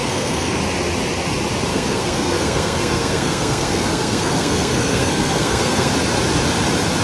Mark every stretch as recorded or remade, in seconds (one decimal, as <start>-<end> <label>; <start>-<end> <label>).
0.0-0.6 remade; 0.6-1.7 recorded; 1.7-5.9 remade; 5.9-7.0 recorded